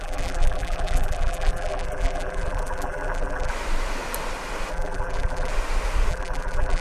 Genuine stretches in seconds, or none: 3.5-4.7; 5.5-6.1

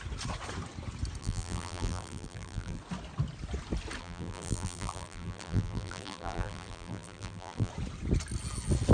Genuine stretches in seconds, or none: 0.0-1.2; 2.8-4.0; 7.7-8.9

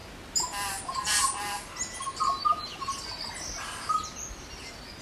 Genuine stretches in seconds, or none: 0.0-5.0

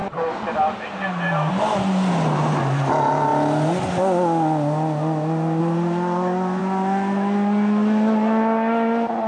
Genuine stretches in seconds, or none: 1.5-9.3